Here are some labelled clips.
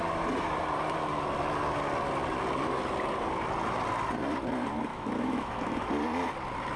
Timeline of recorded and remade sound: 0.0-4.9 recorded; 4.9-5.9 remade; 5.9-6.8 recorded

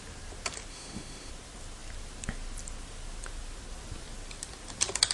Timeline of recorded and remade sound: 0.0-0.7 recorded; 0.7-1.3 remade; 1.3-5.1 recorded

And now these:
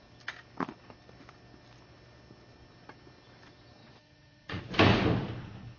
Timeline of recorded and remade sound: 0.0-3.8 recorded; 3.8-4.6 remade; 4.6-5.8 recorded